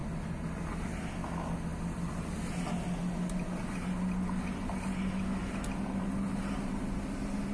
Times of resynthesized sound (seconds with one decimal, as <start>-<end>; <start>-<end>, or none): none